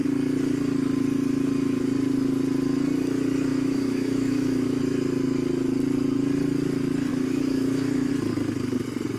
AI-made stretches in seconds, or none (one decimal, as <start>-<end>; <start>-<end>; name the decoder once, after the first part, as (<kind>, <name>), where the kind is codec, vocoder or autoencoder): 3.5-4.8 (autoencoder, DAC-VAE); 7.1-8.1